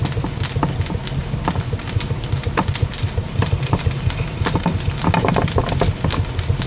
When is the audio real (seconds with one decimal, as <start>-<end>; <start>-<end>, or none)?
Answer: 0.0-1.2; 4.7-6.7